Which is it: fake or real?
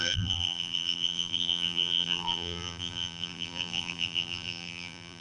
fake